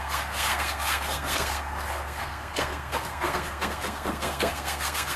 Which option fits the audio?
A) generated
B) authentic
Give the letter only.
A